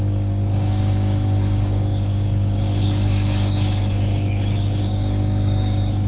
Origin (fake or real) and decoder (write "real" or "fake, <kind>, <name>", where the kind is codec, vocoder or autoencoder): fake, codec, DAC